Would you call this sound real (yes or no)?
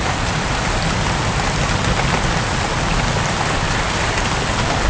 yes